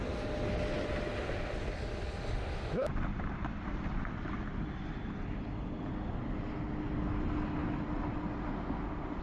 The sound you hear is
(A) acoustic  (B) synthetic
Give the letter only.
A